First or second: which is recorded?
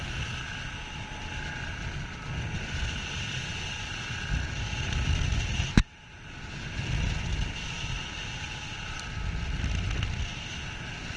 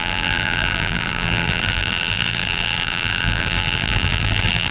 first